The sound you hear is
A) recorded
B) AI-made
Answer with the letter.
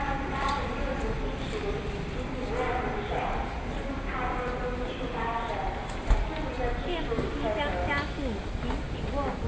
A